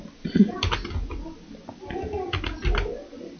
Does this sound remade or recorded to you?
recorded